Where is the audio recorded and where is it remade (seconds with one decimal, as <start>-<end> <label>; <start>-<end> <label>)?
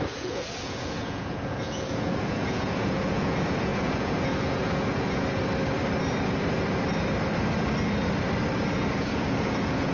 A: 0.0-5.5 remade; 5.5-9.0 recorded; 9.0-9.9 remade